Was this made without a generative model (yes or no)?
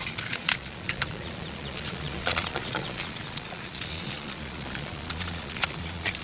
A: no